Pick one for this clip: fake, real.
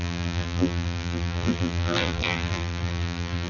fake